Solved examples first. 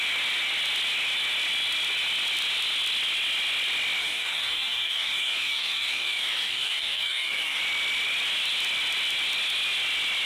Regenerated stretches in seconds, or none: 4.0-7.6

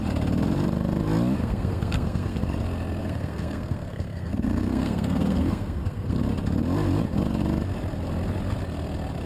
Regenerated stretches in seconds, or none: 1.4-2.4; 3.0-6.2

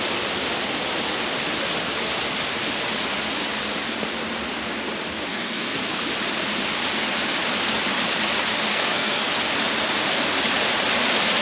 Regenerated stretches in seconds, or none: 5.3-6.0; 8.7-9.3

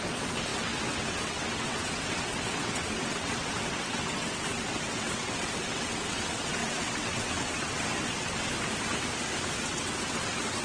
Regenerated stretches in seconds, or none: 0.0-8.5; 9.7-10.6

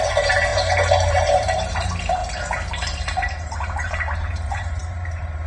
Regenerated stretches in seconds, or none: 0.0-0.5; 1.1-2.2; 2.7-5.5